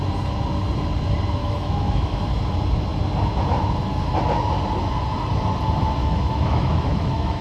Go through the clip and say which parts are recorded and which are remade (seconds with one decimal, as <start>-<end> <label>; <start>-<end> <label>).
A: 0.0-1.4 recorded; 1.4-2.2 remade; 2.2-6.0 recorded; 6.0-7.4 remade